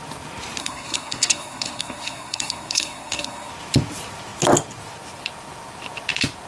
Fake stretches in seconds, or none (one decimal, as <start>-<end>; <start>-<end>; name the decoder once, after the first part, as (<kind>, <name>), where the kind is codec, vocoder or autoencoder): 0.6-3.5 (codec, SNAC)